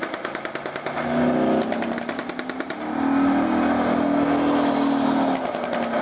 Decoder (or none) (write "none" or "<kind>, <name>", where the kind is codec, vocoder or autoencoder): none